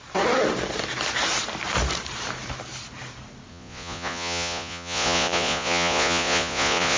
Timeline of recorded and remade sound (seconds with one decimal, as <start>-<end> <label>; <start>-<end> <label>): 0.0-3.5 recorded; 3.5-7.0 remade

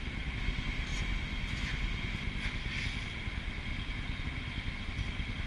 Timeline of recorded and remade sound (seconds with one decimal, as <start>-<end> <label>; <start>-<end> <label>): 0.0-5.5 recorded